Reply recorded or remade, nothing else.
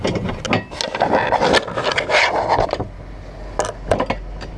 recorded